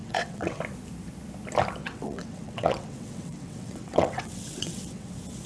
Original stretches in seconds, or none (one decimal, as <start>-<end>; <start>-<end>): 0.6-1.8; 5.1-5.5

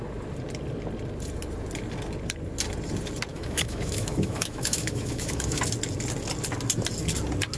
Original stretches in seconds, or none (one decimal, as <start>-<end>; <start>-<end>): 0.0-3.3; 5.6-7.6

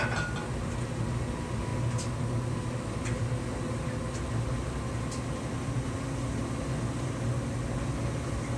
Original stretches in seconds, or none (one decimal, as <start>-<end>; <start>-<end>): 0.0-8.6

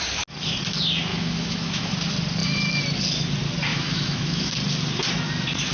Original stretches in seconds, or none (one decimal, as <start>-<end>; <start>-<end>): 0.0-1.1; 1.9-3.7; 4.5-5.7

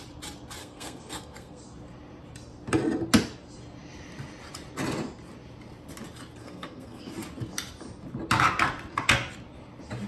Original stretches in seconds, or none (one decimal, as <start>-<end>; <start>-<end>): 0.0-0.6; 1.6-6.4; 7.1-10.1